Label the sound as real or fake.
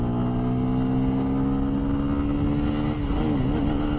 real